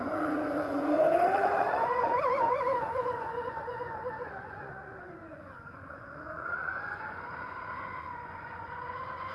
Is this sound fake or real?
fake